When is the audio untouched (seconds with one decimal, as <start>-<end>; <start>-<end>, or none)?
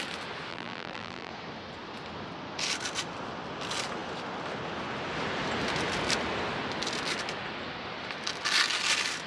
0.0-0.5; 1.3-9.3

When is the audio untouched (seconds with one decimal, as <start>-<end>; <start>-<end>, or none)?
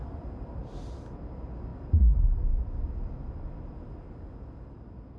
0.0-5.2